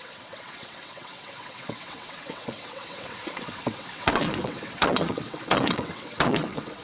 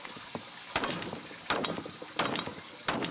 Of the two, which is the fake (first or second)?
first